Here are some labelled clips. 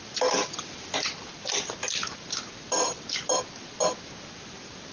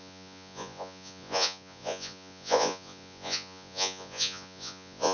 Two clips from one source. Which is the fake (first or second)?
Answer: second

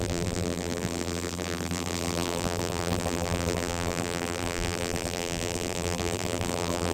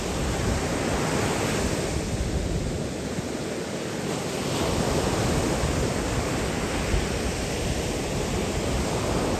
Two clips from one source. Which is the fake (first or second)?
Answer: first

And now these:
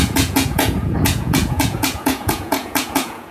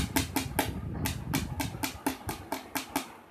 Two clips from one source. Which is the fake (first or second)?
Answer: first